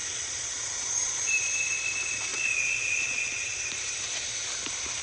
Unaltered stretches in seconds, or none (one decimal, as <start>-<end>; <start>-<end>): 1.3-2.3; 3.2-5.0